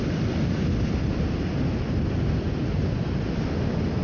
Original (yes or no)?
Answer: yes